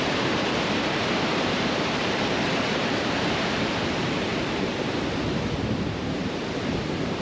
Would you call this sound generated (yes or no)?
yes